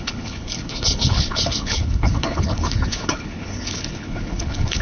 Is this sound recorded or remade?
remade